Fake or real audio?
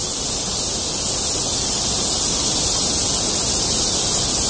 real